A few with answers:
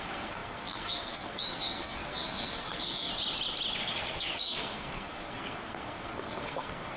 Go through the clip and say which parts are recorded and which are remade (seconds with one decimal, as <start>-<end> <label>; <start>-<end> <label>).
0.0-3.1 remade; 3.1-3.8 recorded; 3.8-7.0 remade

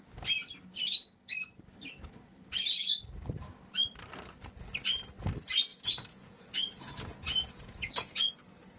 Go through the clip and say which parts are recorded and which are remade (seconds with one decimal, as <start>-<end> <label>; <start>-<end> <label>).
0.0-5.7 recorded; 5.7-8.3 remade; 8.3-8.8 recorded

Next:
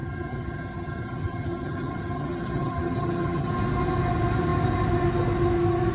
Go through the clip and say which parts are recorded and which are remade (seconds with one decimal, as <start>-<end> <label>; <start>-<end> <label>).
0.0-3.5 remade; 3.5-5.9 recorded